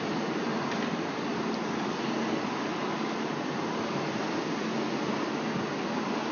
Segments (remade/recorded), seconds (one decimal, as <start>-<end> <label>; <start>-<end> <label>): 0.0-6.3 recorded